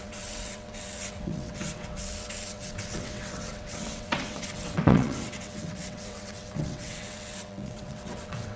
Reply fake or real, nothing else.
fake